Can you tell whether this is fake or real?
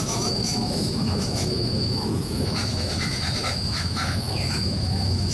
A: fake